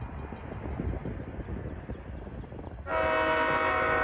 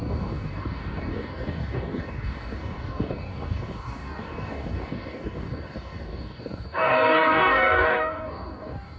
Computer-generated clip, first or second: second